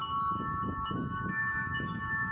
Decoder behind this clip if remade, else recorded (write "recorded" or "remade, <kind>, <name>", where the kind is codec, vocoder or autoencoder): remade, autoencoder, DAC-VAE